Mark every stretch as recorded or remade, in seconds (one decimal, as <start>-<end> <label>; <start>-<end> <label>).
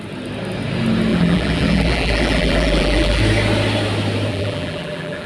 0.0-1.1 recorded; 1.1-3.2 remade; 3.2-4.3 recorded; 4.3-5.3 remade